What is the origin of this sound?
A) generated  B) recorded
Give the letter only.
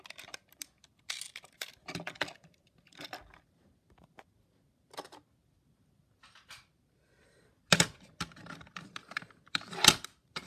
B